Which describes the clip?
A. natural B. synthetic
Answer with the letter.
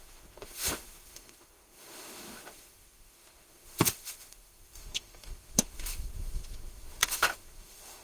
B